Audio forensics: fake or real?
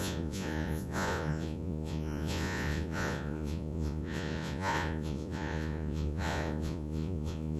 fake